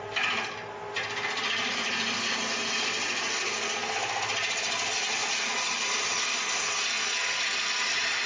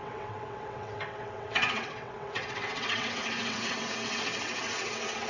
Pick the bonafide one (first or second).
first